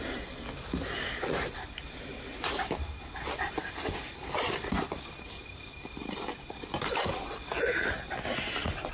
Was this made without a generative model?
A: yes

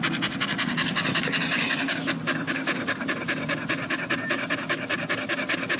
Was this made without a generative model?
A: yes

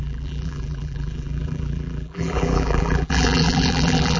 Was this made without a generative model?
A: no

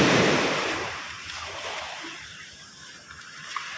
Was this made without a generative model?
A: no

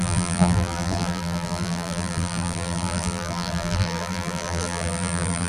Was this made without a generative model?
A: no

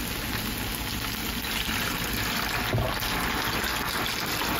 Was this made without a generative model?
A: yes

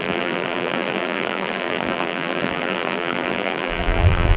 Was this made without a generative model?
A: no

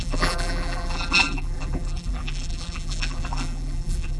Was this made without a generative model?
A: no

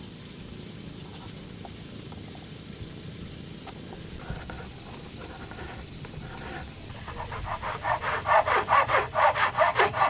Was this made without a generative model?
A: no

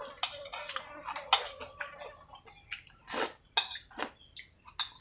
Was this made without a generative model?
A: yes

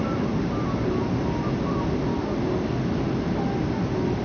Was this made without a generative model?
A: yes